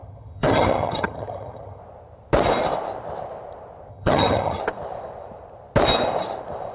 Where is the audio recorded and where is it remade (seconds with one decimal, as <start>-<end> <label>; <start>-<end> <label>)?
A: 0.0-1.8 remade; 1.8-3.9 recorded; 3.9-4.6 remade; 4.6-6.7 recorded